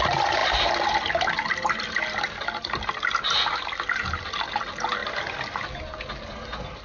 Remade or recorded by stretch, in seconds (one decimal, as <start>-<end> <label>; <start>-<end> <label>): 0.0-6.8 recorded